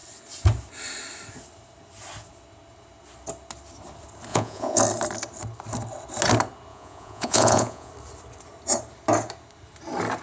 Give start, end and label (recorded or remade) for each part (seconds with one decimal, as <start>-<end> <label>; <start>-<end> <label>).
0.0-4.3 recorded; 4.3-4.8 remade; 4.8-6.7 recorded; 6.7-7.9 remade; 7.9-10.2 recorded